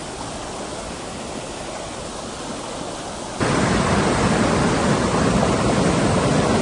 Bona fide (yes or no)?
yes